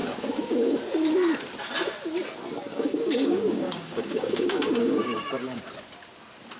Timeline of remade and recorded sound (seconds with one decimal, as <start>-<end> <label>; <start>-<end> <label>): 0.0-0.8 remade; 0.8-2.7 recorded; 2.7-5.6 remade; 5.6-6.6 recorded